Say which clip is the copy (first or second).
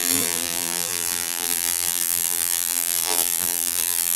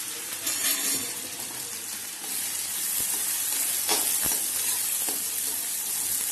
first